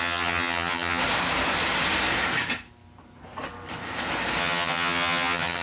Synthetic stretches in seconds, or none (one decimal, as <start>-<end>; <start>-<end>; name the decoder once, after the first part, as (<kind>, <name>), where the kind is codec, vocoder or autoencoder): 0.0-1.0 (vocoder, HiFi-GAN); 4.4-5.6